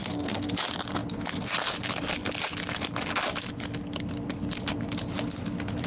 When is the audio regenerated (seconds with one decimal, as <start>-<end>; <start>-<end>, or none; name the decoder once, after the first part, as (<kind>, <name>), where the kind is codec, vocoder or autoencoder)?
0.0-0.5 (codec, SNAC)